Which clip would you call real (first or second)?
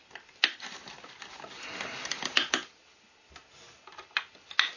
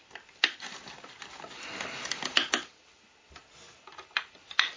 first